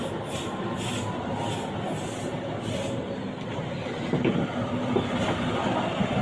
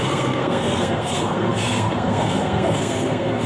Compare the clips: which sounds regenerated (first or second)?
second